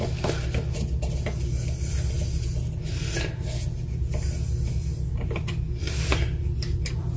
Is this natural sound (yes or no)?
yes